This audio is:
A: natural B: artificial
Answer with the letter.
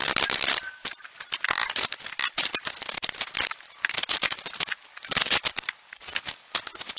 A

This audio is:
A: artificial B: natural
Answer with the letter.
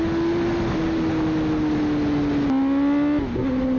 B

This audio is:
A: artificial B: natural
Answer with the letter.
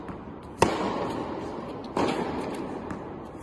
B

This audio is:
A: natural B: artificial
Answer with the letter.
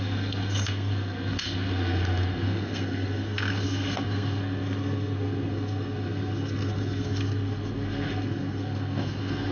B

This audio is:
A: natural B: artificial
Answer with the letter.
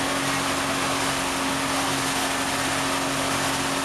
A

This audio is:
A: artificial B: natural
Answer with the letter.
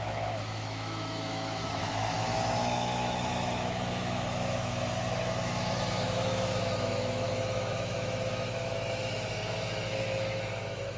A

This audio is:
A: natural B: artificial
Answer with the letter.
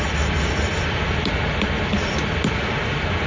A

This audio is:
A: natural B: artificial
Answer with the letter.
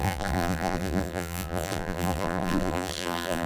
B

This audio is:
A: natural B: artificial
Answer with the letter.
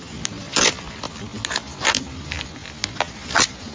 A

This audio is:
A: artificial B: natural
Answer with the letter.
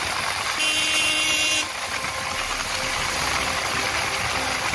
B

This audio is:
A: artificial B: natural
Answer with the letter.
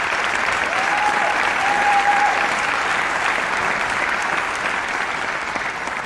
A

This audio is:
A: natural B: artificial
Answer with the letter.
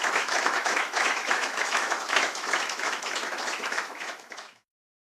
B